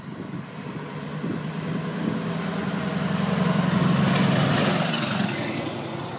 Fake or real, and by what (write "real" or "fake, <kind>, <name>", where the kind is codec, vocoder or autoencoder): real